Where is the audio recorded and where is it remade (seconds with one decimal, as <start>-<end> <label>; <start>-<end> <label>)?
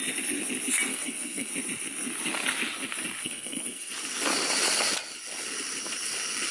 0.0-0.9 recorded; 0.9-1.5 remade; 1.5-3.2 recorded; 3.2-3.9 remade; 3.9-6.5 recorded